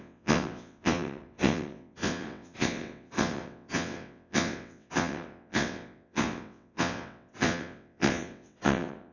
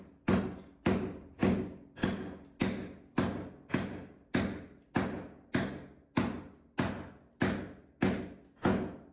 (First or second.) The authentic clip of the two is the second